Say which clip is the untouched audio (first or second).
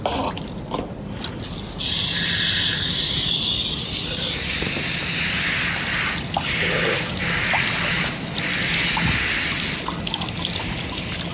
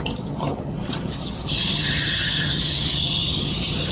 first